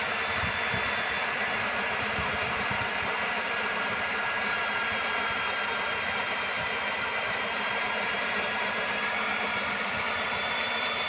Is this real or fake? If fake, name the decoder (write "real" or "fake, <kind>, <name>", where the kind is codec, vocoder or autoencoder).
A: fake, vocoder, BigVGAN v2